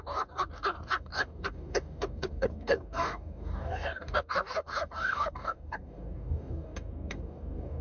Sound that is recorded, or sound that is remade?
remade